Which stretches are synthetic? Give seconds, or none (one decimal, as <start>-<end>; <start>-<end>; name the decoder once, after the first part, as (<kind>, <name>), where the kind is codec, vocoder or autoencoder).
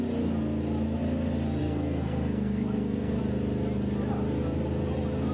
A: 1.6-3.2 (codec, SNAC)